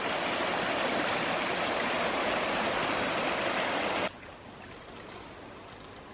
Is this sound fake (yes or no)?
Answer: no